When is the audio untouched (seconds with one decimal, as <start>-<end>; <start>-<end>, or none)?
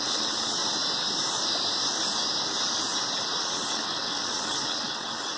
0.6-3.4